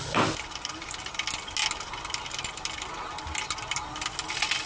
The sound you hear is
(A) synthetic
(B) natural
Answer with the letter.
B